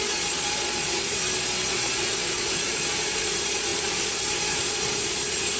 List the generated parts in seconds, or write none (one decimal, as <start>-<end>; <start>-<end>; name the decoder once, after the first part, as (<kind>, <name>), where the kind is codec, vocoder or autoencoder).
0.0-1.2 (vocoder, Vocos); 1.7-5.6